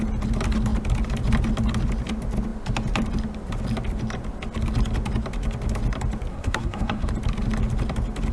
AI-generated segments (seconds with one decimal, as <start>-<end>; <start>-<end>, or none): 6.3-7.1